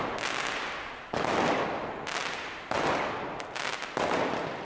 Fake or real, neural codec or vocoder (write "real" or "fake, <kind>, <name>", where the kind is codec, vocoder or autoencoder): real